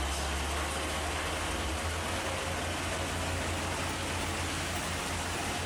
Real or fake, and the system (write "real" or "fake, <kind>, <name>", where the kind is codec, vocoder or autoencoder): real